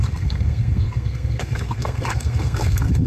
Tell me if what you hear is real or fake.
fake